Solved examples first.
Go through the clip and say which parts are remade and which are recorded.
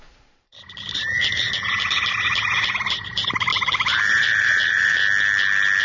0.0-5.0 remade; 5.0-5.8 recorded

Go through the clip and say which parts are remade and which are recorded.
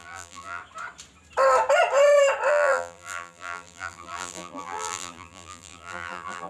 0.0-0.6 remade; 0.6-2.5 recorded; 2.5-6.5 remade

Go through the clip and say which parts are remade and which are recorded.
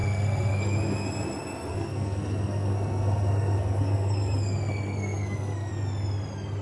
0.0-0.6 remade; 0.6-1.7 recorded; 1.7-5.7 remade; 5.7-6.6 recorded